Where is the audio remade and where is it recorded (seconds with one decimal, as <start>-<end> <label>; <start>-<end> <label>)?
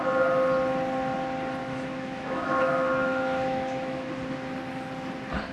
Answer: 0.0-1.6 recorded; 1.6-4.1 remade; 4.1-5.5 recorded